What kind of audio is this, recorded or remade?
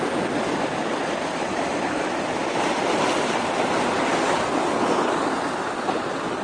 recorded